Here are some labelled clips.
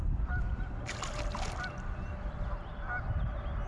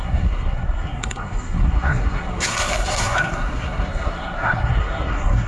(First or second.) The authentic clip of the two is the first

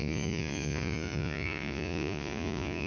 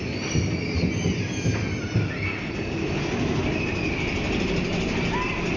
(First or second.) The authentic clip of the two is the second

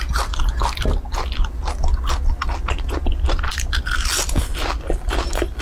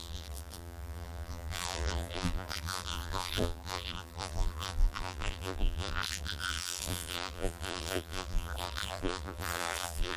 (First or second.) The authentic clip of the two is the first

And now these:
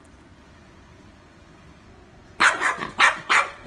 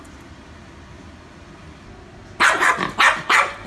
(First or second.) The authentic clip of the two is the second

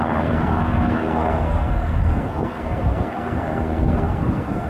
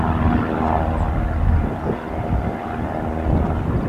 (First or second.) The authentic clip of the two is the second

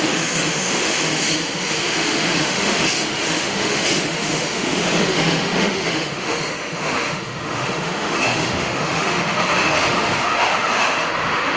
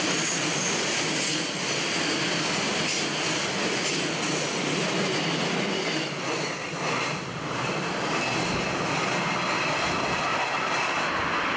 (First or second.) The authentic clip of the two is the second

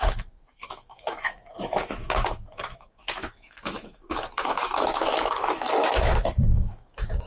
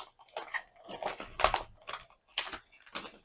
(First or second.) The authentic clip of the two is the second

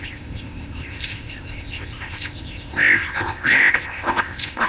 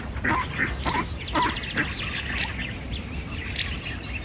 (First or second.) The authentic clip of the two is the second